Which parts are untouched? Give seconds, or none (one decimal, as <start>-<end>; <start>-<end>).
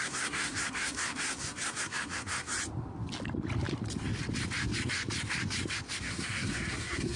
2.5-6.0